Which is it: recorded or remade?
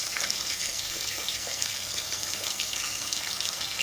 remade